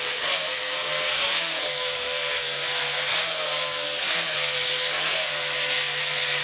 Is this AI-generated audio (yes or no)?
yes